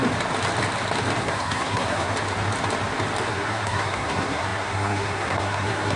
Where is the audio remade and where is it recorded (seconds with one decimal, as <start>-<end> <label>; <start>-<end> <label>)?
0.0-1.2 recorded; 1.2-2.1 remade; 2.1-3.3 recorded; 3.3-6.0 remade